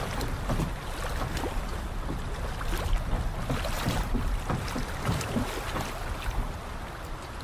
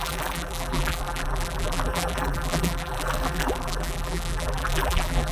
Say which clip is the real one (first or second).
first